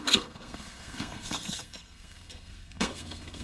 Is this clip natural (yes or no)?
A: no